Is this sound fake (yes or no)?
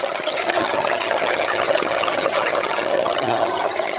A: yes